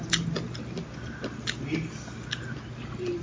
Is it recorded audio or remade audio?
recorded